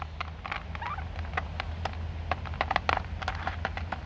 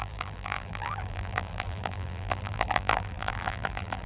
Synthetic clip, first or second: second